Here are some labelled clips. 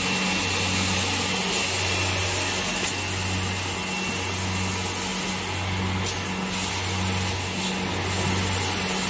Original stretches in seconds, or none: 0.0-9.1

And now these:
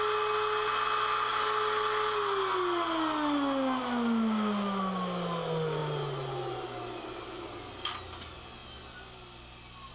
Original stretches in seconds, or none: 0.0-9.9

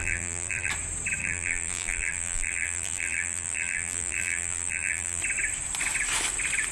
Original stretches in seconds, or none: 0.7-1.2; 5.2-6.7

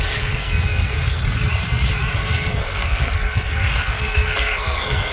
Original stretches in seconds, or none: 1.2-2.1